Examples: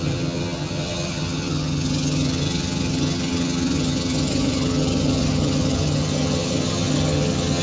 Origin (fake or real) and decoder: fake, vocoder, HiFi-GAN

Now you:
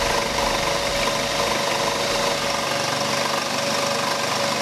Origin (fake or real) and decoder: real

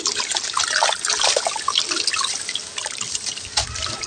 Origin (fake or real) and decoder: real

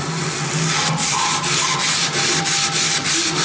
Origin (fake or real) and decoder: real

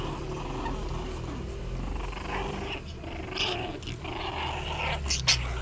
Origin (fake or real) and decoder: real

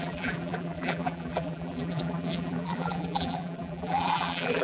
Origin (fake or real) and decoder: fake, vocoder, BigVGAN v2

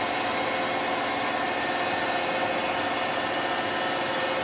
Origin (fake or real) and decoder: real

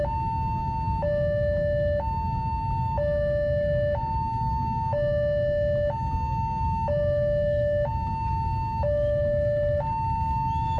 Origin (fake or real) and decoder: real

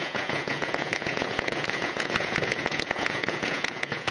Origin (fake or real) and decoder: fake, vocoder, Vocos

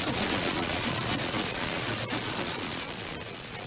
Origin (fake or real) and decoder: fake, vocoder, Vocos